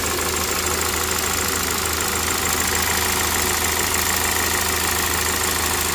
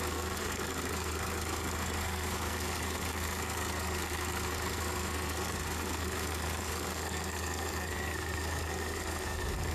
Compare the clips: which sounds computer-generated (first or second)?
second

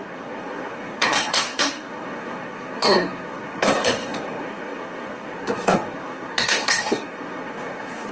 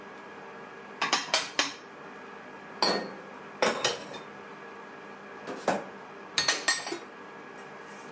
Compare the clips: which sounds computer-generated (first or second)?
first